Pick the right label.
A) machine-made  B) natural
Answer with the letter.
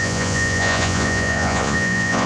A